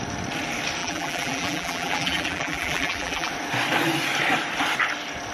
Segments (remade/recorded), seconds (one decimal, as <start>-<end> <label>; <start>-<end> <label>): 0.0-0.8 recorded; 0.8-3.3 remade; 3.3-5.3 recorded